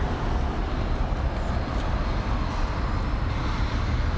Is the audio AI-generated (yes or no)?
no